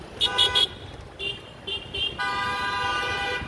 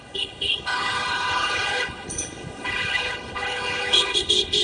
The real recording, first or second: first